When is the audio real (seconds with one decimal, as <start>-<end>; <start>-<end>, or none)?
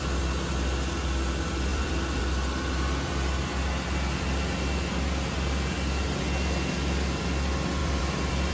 0.0-1.7; 2.2-7.8